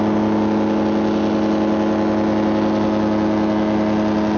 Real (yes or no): yes